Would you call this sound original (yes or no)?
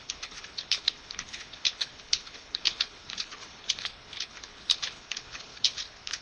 no